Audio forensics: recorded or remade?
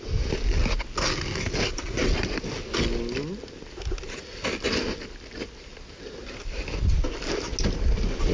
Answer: recorded